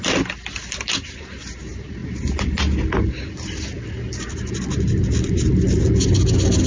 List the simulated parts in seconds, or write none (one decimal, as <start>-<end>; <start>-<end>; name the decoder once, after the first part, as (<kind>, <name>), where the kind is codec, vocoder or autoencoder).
none